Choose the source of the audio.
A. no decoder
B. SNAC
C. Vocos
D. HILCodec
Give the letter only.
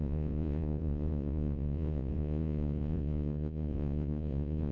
C